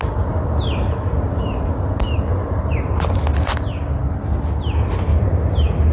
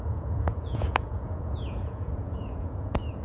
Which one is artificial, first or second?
second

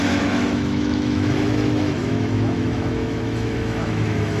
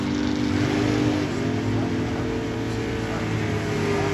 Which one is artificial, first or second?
first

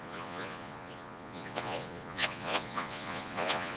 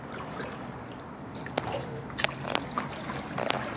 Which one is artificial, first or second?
first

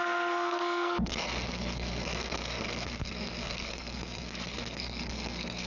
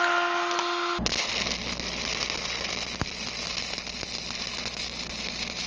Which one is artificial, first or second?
first